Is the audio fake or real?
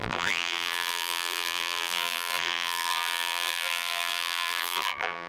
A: fake